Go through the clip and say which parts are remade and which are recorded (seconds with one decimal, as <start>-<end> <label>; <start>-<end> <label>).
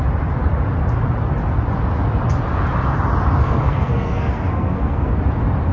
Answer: 0.0-3.4 recorded; 3.4-5.1 remade; 5.1-5.7 recorded